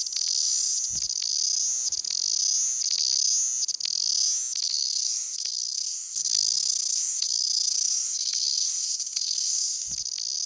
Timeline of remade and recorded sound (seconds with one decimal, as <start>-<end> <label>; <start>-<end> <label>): 0.0-4.7 recorded; 4.7-9.9 remade; 9.9-10.5 recorded